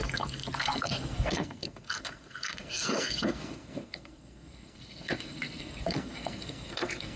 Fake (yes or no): yes